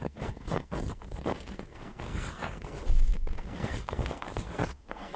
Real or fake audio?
fake